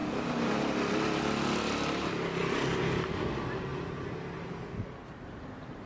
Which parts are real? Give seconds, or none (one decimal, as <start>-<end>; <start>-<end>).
0.0-5.9